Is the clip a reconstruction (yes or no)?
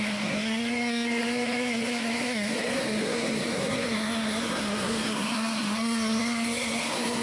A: yes